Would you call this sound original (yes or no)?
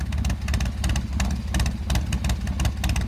yes